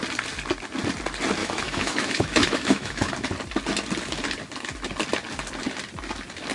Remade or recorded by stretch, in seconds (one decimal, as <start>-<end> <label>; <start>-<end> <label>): 0.0-1.4 recorded; 1.4-3.1 remade; 3.1-6.5 recorded